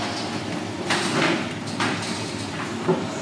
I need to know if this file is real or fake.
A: real